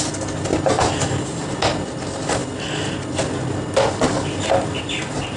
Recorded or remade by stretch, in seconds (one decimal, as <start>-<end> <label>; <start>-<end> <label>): 0.0-0.5 recorded; 0.5-1.2 remade; 1.2-5.4 recorded